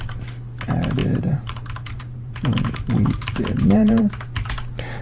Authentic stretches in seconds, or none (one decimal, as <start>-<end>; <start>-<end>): 0.0-1.0; 4.0-5.0